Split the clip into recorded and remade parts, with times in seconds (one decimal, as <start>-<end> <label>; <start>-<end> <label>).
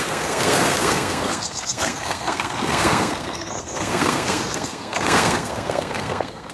0.0-6.5 remade